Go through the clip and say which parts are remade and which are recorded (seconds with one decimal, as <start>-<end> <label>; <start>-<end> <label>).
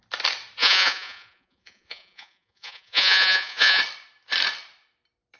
0.0-0.6 recorded; 0.6-3.8 remade; 3.8-5.4 recorded